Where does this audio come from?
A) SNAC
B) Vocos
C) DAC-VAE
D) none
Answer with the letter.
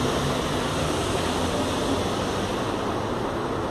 D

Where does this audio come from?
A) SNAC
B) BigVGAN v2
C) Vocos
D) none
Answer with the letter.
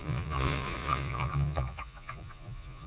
C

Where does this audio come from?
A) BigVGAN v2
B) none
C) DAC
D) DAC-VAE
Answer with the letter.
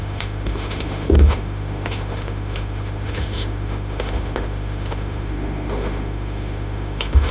D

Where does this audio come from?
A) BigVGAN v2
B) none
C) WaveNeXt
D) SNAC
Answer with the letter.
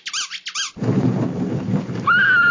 B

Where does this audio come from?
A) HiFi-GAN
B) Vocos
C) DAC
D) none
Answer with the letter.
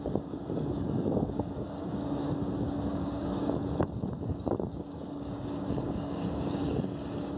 C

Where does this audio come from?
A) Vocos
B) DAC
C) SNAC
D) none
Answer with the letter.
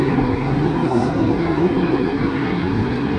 C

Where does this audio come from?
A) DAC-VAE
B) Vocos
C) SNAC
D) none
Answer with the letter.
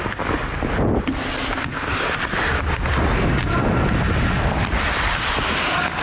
D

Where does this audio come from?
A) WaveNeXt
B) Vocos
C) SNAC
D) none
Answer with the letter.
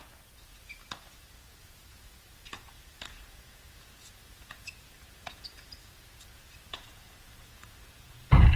B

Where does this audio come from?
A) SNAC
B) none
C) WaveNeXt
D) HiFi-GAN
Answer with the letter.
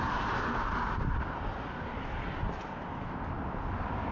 B